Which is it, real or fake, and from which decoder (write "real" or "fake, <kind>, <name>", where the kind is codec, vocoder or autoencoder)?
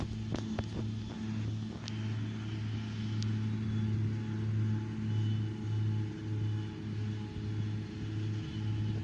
real